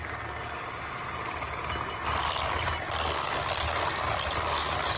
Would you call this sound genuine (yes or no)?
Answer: yes